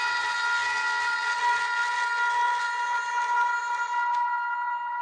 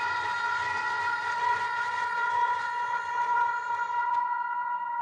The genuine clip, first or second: first